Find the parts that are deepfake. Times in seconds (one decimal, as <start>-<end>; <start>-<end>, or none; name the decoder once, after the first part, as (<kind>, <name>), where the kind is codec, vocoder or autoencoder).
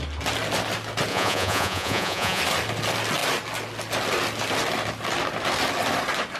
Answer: 1.1-2.4 (vocoder, Vocos)